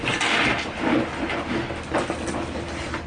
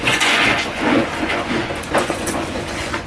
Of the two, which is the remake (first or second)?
second